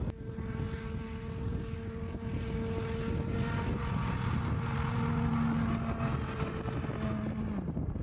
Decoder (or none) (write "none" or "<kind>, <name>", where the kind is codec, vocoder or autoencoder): none